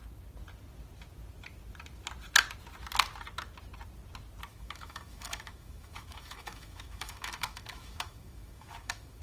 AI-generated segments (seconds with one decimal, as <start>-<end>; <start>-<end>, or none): 4.5-9.2